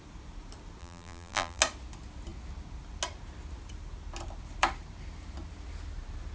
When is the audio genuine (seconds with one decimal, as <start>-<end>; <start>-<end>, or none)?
0.0-0.8; 1.6-6.3